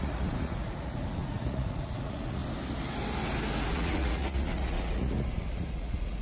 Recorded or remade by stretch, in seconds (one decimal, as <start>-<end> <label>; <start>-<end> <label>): 0.0-2.4 remade; 2.4-3.7 recorded; 3.7-6.2 remade